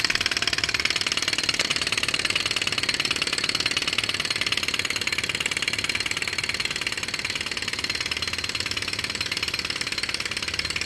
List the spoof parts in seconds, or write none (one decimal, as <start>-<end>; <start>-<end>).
1.7-2.4